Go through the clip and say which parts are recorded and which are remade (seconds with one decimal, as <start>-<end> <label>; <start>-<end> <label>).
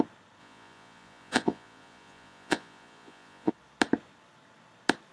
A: 0.0-0.4 recorded; 0.4-3.5 remade; 3.5-5.1 recorded